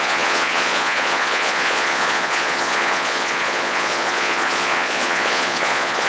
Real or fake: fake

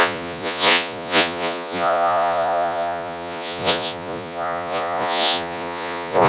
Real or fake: fake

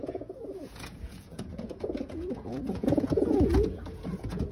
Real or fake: fake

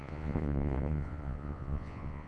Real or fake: fake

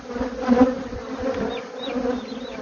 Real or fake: real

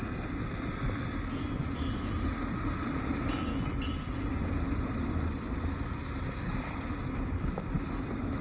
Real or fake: real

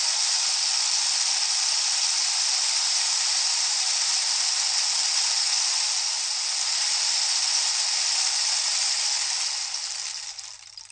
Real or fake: real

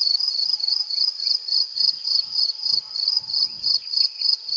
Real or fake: fake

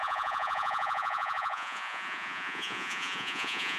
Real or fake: fake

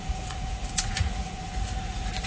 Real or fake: fake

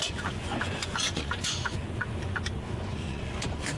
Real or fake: fake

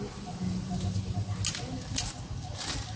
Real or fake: real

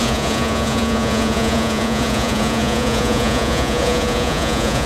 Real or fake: fake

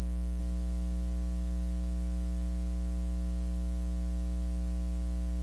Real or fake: real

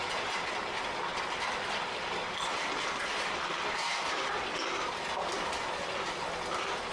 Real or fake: real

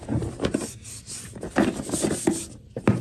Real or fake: real